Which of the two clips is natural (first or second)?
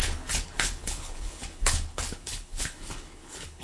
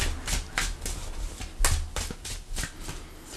second